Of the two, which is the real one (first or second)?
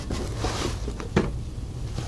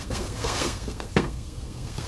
first